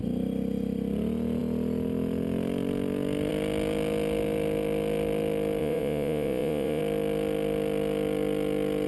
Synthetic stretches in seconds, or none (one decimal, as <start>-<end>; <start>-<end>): 5.6-6.8